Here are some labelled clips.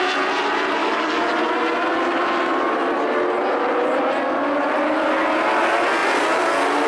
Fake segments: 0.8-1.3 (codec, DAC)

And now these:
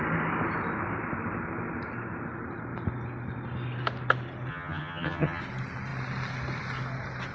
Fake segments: 4.5-5.4 (vocoder, HiFi-GAN)

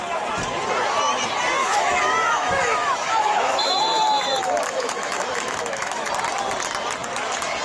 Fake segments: 1.6-6.1 (autoencoder, DAC-VAE)

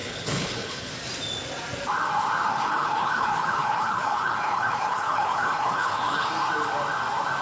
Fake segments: 0.0-0.9 (codec, HILCodec); 2.5-6.3

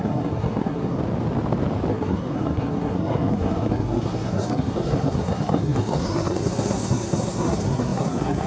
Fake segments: 0.0-1.0 (codec, SNAC); 1.9-8.5